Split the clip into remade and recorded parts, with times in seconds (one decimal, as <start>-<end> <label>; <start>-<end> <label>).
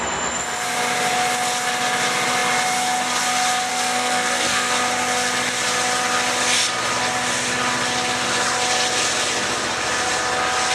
0.0-3.7 recorded; 3.7-4.7 remade; 4.7-10.7 recorded